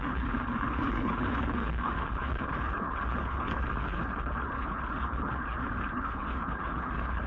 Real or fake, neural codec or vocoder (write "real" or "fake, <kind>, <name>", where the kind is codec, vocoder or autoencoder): fake, codec, HILCodec